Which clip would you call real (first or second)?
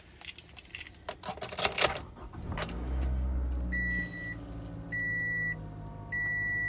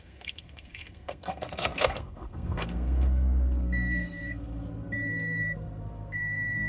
first